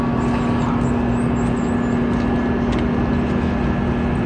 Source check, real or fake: real